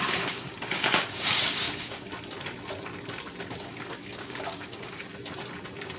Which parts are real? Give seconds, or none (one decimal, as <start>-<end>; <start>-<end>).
2.1-3.6; 5.1-6.0